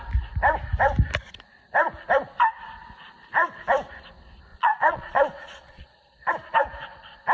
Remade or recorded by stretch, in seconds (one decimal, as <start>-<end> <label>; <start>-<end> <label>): 0.0-4.5 recorded; 4.5-6.3 remade; 6.3-7.3 recorded